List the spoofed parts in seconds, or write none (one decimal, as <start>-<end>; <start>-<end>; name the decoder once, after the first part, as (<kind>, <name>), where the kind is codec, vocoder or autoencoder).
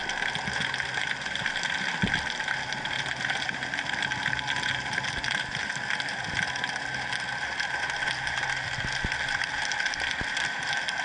none